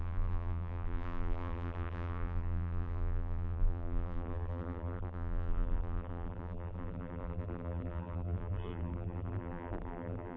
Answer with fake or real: fake